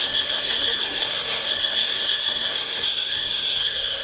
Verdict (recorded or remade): remade